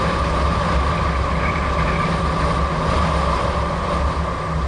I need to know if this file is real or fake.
real